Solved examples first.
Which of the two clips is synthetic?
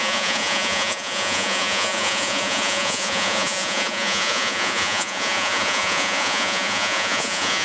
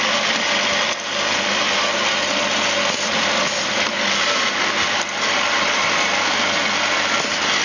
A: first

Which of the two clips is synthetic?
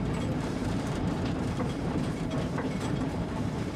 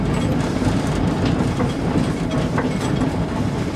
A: first